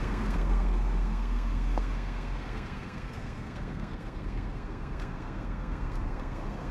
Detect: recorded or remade remade